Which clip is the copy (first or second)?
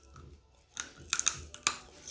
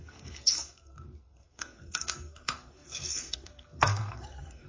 second